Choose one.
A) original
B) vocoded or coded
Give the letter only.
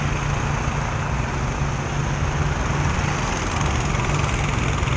A